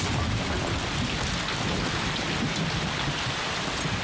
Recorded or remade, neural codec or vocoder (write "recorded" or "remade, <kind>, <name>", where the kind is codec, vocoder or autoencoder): recorded